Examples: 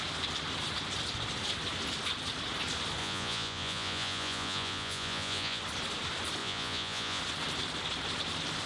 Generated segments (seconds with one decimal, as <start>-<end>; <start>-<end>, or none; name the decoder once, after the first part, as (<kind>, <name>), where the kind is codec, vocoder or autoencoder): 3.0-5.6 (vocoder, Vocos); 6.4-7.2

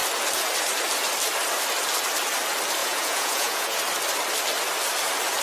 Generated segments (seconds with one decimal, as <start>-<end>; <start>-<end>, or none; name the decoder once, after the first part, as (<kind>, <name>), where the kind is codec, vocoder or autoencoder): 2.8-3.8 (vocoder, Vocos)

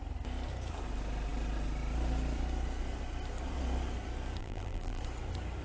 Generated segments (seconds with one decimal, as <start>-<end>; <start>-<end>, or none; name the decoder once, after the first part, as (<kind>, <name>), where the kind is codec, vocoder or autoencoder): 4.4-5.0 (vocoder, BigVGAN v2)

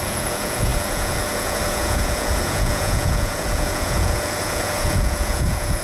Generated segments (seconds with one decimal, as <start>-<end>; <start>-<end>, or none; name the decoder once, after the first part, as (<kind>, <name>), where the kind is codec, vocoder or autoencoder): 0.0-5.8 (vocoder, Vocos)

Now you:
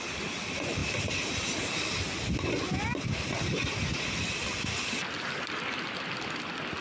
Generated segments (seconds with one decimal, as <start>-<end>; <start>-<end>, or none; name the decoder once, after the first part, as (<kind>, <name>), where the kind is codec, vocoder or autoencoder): none